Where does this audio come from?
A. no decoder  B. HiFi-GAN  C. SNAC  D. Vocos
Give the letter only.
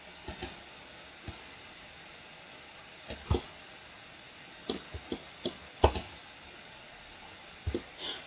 A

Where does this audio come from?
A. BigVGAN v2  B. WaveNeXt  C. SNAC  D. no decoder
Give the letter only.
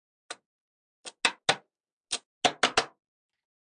D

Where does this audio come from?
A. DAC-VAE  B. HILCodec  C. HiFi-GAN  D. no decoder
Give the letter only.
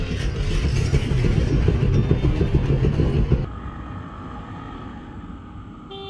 D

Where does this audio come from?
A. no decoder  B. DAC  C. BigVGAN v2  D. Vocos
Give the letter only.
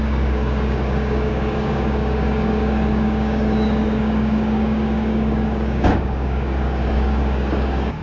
B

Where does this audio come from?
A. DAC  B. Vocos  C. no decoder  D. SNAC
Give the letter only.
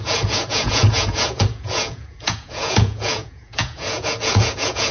B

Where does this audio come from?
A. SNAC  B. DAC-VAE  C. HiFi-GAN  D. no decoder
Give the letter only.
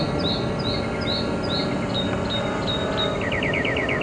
D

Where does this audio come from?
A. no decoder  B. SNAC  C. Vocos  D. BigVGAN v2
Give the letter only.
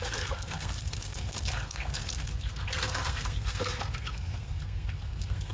B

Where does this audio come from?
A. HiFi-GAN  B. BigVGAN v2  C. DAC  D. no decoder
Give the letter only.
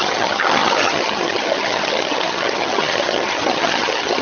A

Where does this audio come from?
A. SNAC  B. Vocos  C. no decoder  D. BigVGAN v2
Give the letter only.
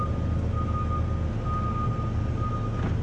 C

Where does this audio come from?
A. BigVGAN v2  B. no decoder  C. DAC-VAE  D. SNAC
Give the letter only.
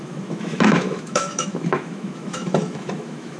C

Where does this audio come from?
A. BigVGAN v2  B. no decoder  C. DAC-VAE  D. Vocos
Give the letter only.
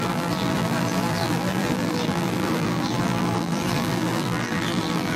A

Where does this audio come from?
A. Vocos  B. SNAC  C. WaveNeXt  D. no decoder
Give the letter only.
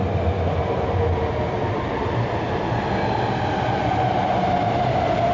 D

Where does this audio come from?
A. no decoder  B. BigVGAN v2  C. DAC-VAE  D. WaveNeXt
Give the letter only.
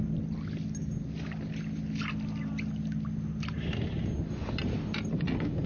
A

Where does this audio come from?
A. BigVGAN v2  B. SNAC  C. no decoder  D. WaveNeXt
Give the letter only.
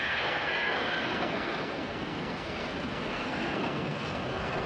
B